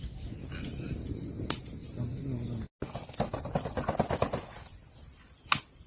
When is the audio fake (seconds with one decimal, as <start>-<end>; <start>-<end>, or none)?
none